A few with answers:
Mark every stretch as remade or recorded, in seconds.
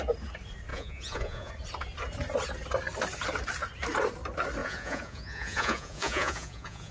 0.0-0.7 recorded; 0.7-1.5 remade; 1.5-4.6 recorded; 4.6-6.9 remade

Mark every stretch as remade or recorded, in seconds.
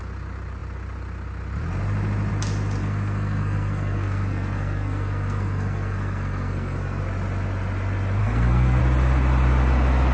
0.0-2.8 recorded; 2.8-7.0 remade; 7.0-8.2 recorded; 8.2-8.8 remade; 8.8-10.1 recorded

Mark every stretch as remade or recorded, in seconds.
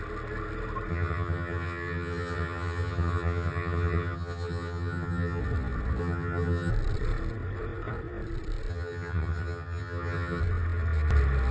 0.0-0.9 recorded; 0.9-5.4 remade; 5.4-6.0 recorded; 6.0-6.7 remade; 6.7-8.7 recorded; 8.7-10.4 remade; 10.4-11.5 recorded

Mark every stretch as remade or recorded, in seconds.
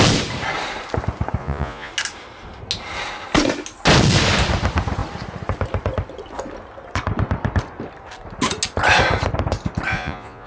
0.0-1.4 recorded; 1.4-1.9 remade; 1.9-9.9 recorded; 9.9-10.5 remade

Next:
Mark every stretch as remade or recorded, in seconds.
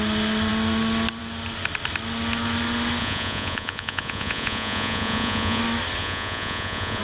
0.0-3.0 recorded; 3.0-5.6 remade; 5.6-6.0 recorded; 6.0-7.0 remade